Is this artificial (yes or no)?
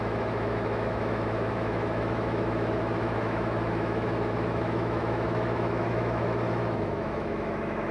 yes